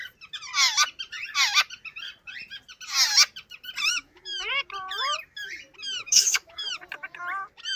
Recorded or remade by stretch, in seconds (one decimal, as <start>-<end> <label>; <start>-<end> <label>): 0.0-3.9 recorded; 3.9-4.5 remade; 4.5-6.0 recorded; 6.0-6.7 remade; 6.7-7.8 recorded